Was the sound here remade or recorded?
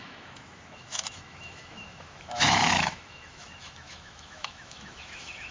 remade